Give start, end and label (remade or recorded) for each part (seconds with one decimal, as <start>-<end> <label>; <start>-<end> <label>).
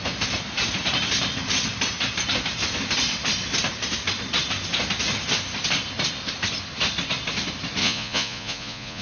0.0-7.8 recorded; 7.8-9.0 remade